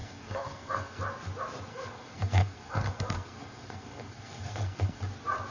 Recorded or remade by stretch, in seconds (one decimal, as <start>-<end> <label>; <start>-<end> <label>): 0.0-1.0 remade; 1.0-1.7 recorded; 1.7-5.0 remade; 5.0-5.5 recorded